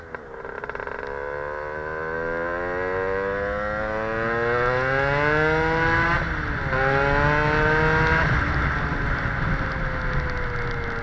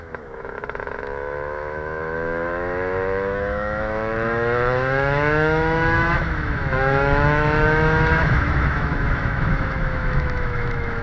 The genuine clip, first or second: first